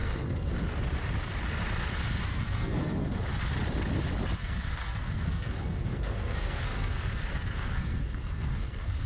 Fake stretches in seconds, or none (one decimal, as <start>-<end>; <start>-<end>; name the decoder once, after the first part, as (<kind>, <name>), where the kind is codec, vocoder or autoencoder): 0.0-0.5 (codec, SNAC); 2.3-3.2; 4.4-9.1